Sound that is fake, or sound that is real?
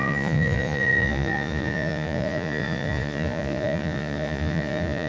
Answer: fake